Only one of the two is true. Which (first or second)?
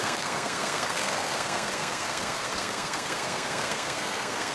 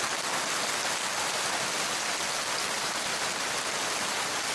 second